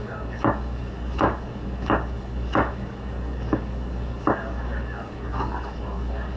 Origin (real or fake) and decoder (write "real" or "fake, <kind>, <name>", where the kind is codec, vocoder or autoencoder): fake, codec, DAC